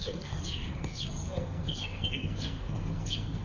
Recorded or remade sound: remade